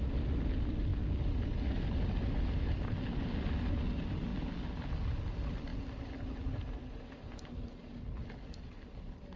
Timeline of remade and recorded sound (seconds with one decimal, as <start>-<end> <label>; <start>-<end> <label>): 0.0-9.4 recorded